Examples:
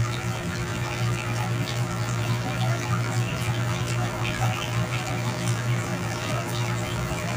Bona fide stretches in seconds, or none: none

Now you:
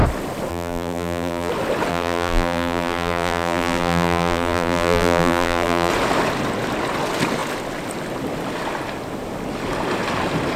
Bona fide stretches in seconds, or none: 0.0-0.5; 1.5-1.9; 5.9-10.6

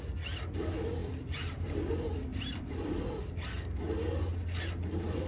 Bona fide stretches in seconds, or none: 0.0-1.0; 1.9-2.3; 3.2-5.3